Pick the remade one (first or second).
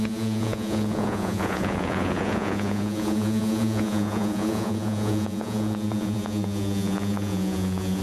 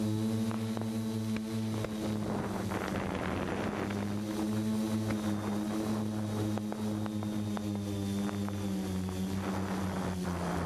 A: first